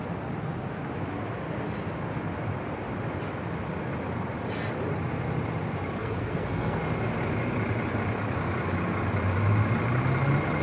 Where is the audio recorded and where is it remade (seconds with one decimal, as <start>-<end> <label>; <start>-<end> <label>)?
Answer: 0.0-6.0 recorded; 6.0-6.8 remade; 6.8-10.6 recorded